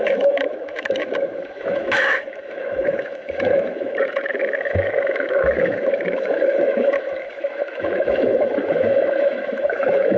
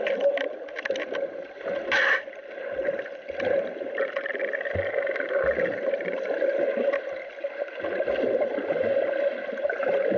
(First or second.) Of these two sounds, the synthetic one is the first